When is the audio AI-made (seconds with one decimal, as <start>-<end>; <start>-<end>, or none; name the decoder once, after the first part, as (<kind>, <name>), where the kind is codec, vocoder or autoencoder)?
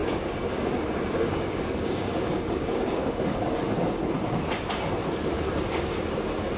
0.0-3.5 (codec, DAC)